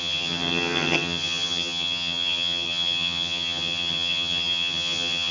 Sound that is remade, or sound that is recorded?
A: remade